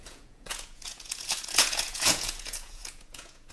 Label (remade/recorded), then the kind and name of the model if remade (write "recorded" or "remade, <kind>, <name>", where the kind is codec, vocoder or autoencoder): remade, vocoder, Vocos